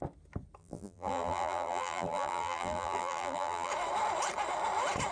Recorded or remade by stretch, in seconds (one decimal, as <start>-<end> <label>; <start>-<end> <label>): 0.0-0.6 recorded; 0.6-3.7 remade; 3.7-5.1 recorded